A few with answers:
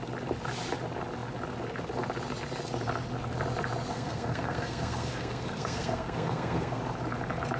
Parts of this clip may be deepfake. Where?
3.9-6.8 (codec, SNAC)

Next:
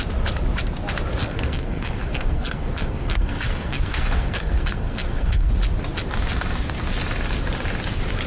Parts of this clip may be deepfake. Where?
1.2-5.5 (codec, SNAC)

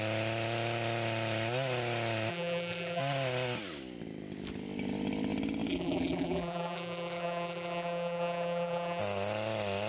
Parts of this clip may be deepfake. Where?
2.3-3.0 (vocoder, BigVGAN v2); 5.7-9.0

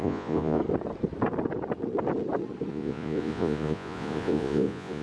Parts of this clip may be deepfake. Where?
0.0-0.6 (vocoder, Vocos); 2.7-5.0

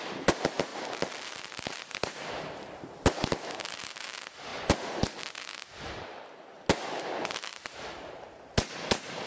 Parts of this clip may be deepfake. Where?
7.5-8.4 (vocoder, BigVGAN v2)